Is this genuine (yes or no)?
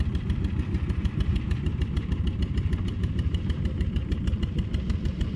no